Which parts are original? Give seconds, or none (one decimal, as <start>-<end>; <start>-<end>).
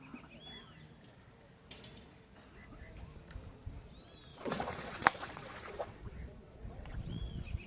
0.0-4.3; 7.3-7.7